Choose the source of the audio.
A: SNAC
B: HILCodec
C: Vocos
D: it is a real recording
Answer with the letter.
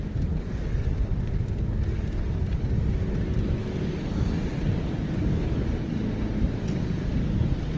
D